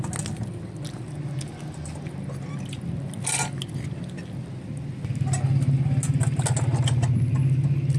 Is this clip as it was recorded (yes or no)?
yes